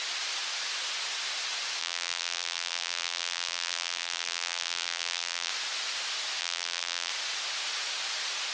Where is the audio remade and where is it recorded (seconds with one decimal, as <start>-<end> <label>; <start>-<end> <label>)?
0.0-1.8 recorded; 1.8-5.5 remade; 5.5-6.4 recorded; 6.4-7.1 remade; 7.1-8.5 recorded